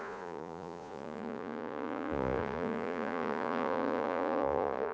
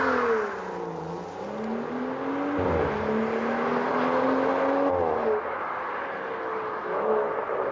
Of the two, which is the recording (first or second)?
second